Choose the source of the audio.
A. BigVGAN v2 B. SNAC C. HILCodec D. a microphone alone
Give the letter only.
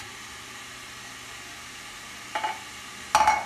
D